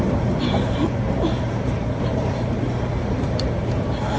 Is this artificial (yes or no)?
yes